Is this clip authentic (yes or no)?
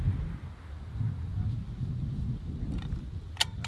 yes